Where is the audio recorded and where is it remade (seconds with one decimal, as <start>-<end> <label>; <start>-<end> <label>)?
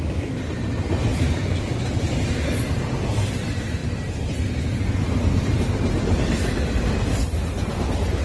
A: 0.0-1.1 recorded; 1.1-1.8 remade; 1.8-8.2 recorded